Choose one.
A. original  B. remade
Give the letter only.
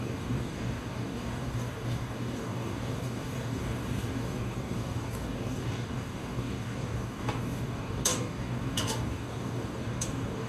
B